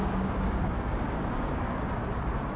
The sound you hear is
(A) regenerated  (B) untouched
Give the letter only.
A